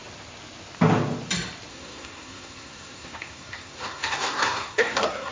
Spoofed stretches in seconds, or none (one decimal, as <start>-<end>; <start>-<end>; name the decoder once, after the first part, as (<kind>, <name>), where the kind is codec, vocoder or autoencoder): 1.7-5.3 (codec, SNAC)